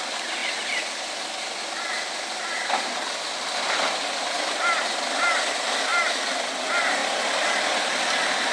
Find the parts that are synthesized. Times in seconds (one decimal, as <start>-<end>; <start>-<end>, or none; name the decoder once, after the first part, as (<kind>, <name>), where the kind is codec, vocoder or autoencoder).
none